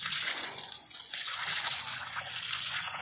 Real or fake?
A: fake